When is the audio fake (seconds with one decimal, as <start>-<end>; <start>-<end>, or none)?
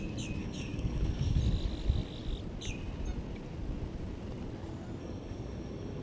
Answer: 0.4-1.4; 5.0-6.0